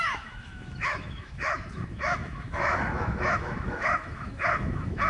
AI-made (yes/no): yes